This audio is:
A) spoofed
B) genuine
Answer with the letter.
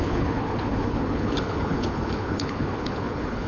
A